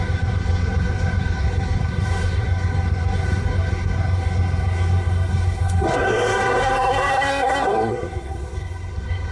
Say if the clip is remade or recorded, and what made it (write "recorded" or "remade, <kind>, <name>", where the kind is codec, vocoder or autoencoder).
remade, codec, SNAC